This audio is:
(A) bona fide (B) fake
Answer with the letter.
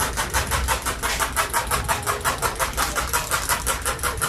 B